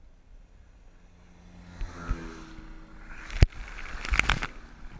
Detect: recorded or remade recorded